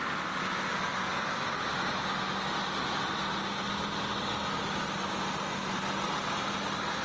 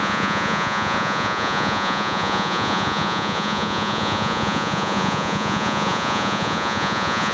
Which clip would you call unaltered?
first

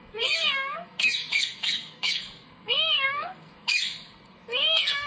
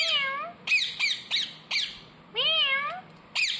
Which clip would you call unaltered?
second